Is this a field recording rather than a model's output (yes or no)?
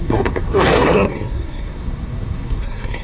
no